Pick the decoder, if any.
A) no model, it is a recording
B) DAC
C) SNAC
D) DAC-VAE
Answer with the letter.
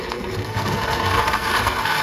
C